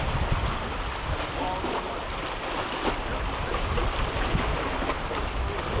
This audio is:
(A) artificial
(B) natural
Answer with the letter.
B